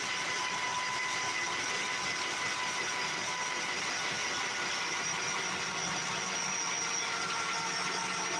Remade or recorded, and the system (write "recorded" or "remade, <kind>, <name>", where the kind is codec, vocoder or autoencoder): recorded